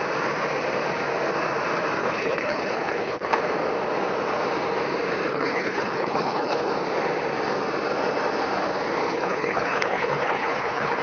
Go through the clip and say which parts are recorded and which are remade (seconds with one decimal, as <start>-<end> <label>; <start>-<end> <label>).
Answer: 0.0-2.0 recorded; 2.0-3.4 remade; 3.4-5.3 recorded; 5.3-6.7 remade; 6.7-9.1 recorded; 9.1-11.0 remade